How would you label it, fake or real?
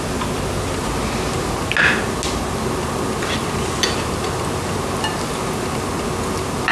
real